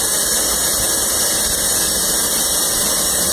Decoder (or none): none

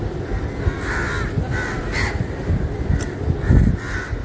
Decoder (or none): none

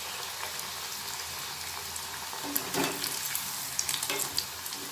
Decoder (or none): none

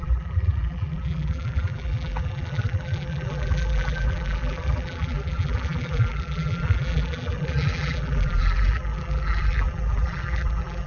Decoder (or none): vocoder, BigVGAN v2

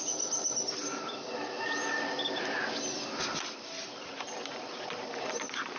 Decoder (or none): none